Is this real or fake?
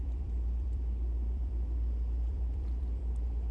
fake